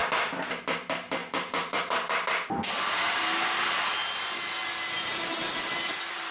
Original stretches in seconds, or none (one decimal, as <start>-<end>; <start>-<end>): 0.0-0.6; 4.6-5.6